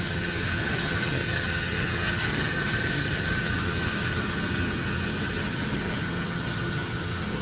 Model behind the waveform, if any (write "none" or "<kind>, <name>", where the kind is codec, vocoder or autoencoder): vocoder, HiFi-GAN